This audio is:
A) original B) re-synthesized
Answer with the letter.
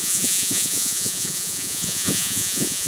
B